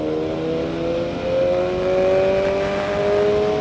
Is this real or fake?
real